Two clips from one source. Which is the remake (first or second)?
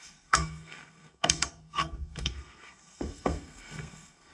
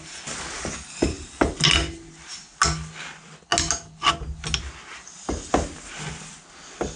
first